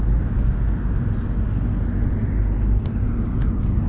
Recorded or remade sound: recorded